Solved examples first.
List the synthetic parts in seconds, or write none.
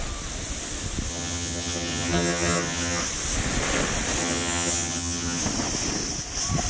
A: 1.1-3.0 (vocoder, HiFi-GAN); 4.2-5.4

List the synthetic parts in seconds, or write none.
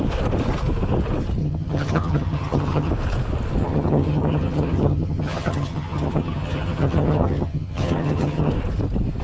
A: 1.4-2.9 (vocoder, HiFi-GAN); 3.6-8.5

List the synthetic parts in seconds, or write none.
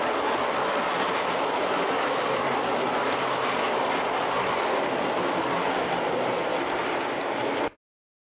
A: none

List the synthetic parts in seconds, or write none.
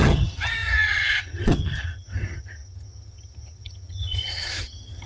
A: 0.0-5.1 (vocoder, HiFi-GAN)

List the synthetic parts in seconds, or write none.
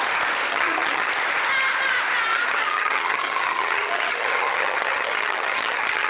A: 0.5-1.1 (vocoder, HiFi-GAN); 2.3-6.1